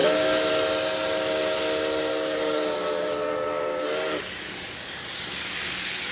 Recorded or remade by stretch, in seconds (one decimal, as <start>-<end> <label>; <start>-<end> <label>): 0.0-0.5 remade; 0.5-2.1 recorded; 2.1-6.1 remade

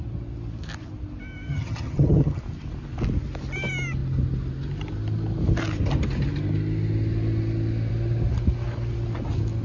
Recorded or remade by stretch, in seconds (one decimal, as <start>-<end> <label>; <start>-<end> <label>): 0.0-1.5 recorded; 1.5-2.4 remade; 2.4-9.6 recorded

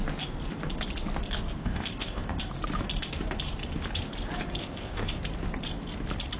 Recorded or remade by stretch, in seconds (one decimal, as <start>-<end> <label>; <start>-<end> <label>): 0.0-1.6 recorded; 1.6-2.4 remade; 2.4-4.6 recorded; 4.6-5.2 remade; 5.2-6.4 recorded

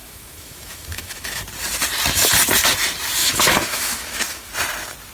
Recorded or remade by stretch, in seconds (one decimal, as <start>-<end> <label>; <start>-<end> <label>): 0.0-1.4 remade; 1.4-3.2 recorded; 3.2-4.5 remade; 4.5-5.1 recorded

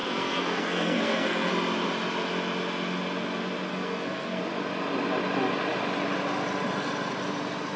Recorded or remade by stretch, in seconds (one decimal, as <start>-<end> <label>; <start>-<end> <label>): 0.0-1.5 remade; 1.5-3.7 recorded; 3.7-4.4 remade; 4.4-7.8 recorded

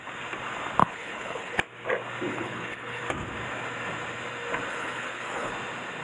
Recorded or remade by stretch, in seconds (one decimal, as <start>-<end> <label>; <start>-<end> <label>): 0.0-0.8 recorded; 0.8-1.6 remade; 1.6-2.3 recorded; 2.3-3.0 remade; 3.0-4.7 recorded; 4.7-5.5 remade; 5.5-6.0 recorded